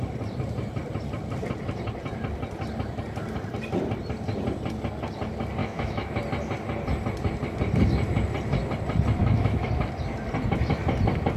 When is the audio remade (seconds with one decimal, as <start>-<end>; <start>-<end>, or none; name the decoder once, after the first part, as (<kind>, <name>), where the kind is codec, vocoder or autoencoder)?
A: 5.6-6.2 (autoencoder, DAC-VAE); 9.2-9.7